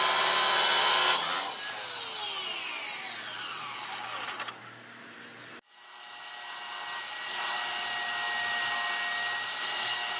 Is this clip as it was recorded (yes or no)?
yes